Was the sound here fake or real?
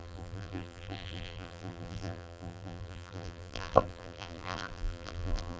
fake